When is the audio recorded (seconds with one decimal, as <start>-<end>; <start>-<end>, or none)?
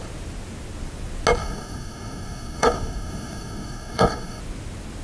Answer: 0.0-1.4; 4.4-5.0